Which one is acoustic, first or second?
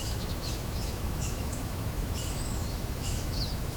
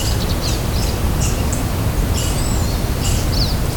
second